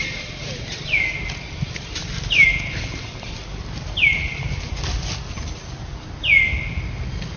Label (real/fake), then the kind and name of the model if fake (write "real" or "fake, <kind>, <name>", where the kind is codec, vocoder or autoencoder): real